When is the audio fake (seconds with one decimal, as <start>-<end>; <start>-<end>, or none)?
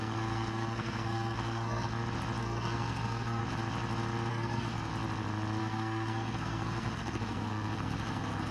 0.0-1.9; 2.4-3.4; 4.3-4.9; 5.6-8.5